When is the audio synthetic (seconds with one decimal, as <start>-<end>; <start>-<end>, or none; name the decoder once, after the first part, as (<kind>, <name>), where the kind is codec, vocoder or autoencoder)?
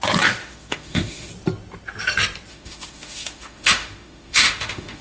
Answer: 0.4-1.3 (autoencoder, DAC-VAE); 2.5-5.0